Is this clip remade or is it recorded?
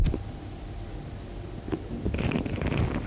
recorded